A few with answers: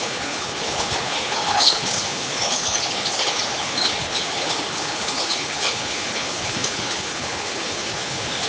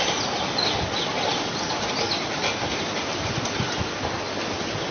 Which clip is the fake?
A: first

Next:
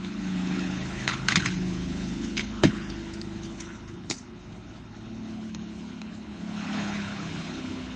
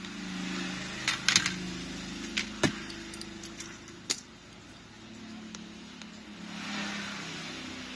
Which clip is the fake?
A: first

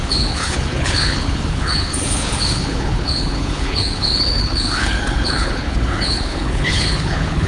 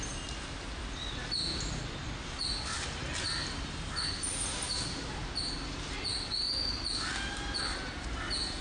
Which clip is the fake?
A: first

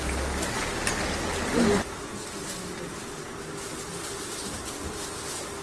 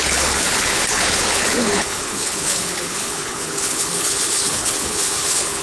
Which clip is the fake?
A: second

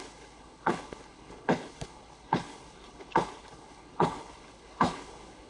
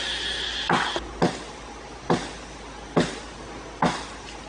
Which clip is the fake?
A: first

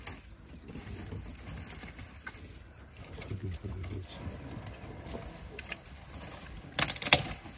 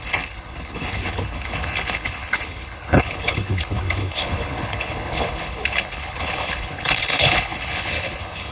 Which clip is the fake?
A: second